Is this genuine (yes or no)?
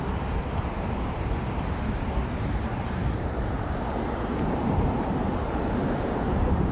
no